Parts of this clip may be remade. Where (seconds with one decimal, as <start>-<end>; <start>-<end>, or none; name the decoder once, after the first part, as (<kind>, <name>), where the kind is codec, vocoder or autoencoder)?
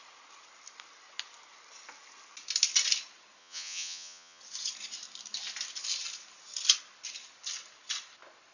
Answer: 3.4-4.4 (vocoder, Vocos)